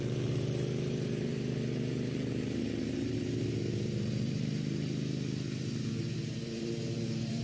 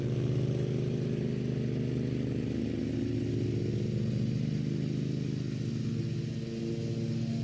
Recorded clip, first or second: second